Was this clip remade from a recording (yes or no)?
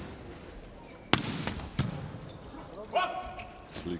no